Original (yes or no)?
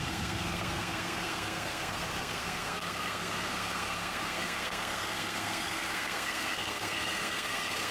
no